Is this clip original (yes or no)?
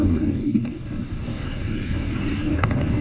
no